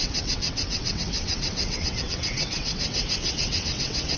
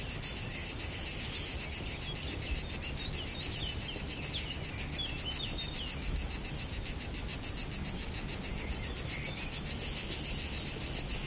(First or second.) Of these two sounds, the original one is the second